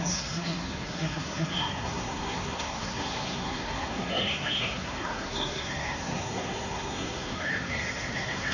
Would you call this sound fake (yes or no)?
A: yes